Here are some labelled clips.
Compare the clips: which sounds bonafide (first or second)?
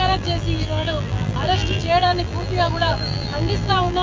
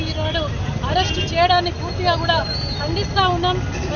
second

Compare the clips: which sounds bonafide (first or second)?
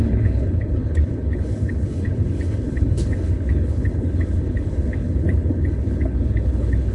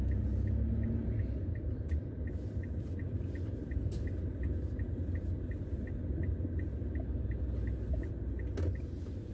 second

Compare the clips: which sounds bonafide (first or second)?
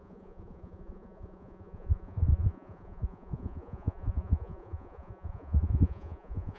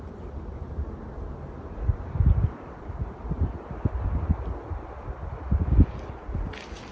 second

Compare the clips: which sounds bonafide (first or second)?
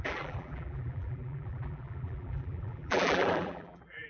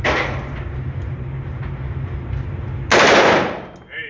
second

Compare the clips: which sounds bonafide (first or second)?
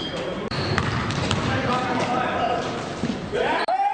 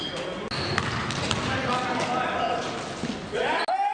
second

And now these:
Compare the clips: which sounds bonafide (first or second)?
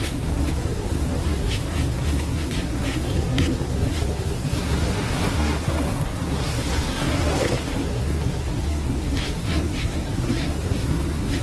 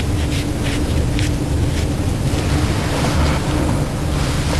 second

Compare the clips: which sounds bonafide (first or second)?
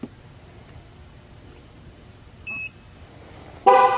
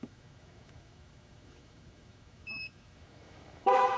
first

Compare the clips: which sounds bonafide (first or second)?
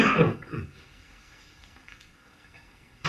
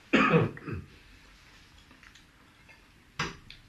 second